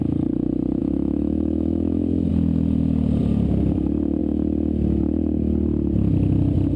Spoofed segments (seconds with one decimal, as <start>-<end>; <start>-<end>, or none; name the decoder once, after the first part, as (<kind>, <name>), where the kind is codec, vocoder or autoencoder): 0.8-2.3 (autoencoder, DAC-VAE)

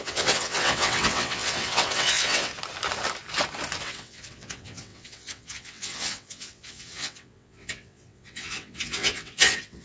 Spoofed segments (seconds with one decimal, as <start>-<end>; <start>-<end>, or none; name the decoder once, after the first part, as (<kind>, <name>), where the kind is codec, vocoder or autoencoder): 0.0-2.5 (vocoder, WaveNeXt); 3.8-9.8